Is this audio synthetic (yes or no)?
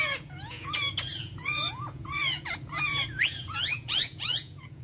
yes